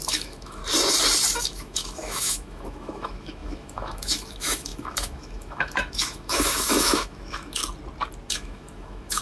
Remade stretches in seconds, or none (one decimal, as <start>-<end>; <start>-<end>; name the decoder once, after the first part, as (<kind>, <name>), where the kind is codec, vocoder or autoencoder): 0.0-0.6 (autoencoder, DAC-VAE); 1.4-7.6; 8.3-9.2